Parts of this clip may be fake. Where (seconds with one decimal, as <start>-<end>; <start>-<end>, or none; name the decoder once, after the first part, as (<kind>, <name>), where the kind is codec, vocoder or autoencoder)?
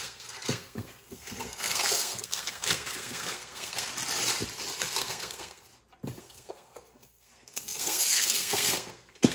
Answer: 0.0-3.9 (codec, SNAC); 4.8-5.7; 6.2-9.3